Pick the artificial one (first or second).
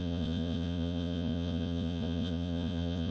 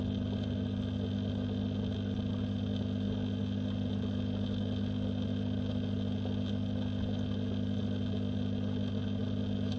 first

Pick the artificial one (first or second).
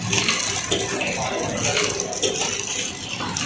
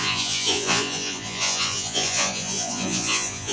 second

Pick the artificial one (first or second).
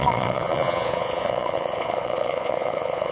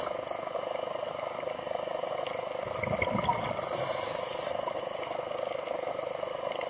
first